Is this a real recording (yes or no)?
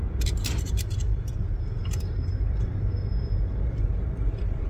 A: no